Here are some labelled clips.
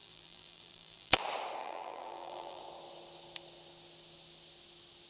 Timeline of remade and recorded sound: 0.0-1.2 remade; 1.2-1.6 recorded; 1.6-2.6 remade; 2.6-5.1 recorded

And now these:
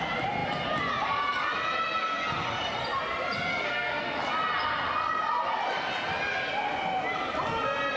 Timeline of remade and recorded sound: 0.0-3.5 recorded; 3.5-4.2 remade; 4.2-8.0 recorded

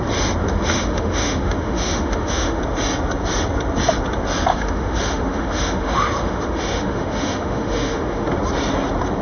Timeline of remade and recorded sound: 0.0-0.5 recorded; 0.5-2.6 remade; 2.6-4.5 recorded; 4.5-8.3 remade; 8.3-9.2 recorded

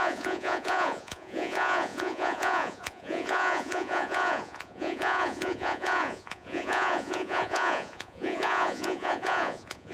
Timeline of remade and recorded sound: 0.0-9.9 remade

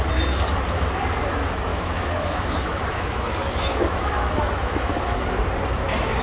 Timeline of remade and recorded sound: 0.0-1.7 recorded; 1.7-5.4 remade; 5.4-6.2 recorded

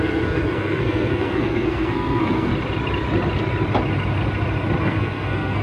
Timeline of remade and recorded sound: 0.0-2.5 remade; 2.5-4.8 recorded; 4.8-5.6 remade